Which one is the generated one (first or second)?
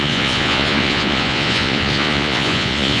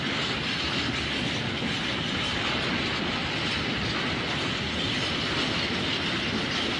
first